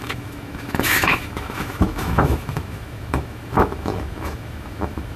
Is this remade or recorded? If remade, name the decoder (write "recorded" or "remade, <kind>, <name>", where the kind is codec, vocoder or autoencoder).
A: remade, autoencoder, DAC-VAE